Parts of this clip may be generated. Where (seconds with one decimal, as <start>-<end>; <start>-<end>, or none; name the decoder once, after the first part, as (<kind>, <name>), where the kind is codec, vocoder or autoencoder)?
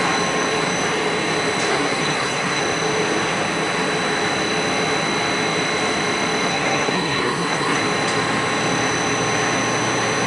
1.7-2.6 (codec, SNAC); 6.5-7.8